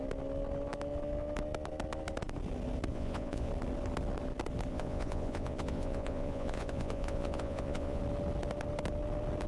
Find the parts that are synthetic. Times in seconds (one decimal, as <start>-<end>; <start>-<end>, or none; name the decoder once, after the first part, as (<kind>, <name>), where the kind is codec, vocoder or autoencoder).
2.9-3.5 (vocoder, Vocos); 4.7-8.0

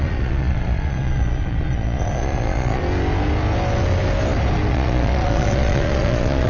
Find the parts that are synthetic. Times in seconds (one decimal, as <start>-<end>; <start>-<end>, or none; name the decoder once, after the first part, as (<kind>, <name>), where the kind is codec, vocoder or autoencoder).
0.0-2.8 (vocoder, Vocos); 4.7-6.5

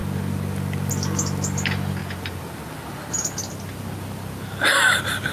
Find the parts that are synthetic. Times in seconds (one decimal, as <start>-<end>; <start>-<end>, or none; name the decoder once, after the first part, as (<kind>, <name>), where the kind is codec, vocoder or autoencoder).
none

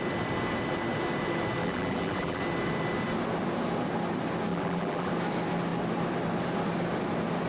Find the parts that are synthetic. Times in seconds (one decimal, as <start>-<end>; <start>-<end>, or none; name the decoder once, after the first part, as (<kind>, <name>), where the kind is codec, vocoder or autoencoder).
1.6-2.4 (vocoder, BigVGAN v2); 4.5-5.1

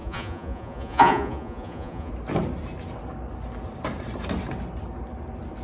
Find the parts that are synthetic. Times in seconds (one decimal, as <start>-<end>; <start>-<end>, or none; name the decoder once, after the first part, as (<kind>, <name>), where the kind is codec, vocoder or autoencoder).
0.0-2.1 (vocoder, Vocos)

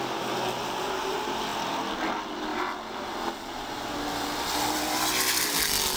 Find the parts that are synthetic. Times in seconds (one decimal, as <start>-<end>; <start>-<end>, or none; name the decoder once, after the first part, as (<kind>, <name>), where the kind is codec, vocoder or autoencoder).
none

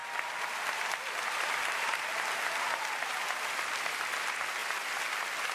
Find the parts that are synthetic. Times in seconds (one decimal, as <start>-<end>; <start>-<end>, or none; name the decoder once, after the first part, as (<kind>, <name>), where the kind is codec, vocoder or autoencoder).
0.7-4.6 (vocoder, BigVGAN v2)

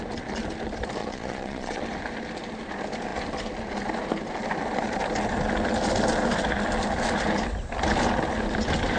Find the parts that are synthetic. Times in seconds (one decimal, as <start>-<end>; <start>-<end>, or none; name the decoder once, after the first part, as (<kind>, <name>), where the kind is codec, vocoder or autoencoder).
1.0-1.8 (vocoder, Vocos)